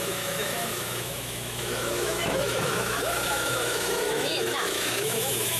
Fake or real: fake